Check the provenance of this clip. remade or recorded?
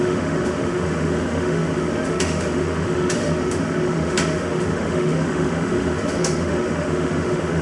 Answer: remade